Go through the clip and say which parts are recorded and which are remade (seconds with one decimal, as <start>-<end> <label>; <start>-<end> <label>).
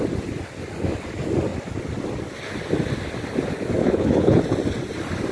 0.0-3.8 recorded; 3.8-4.4 remade; 4.4-5.3 recorded